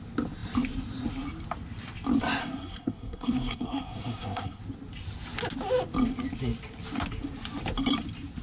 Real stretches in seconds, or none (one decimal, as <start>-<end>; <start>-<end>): 0.0-2.4; 4.6-8.4